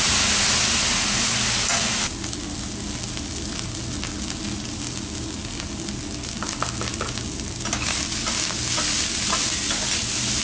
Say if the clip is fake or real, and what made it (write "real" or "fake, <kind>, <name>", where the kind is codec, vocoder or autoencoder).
real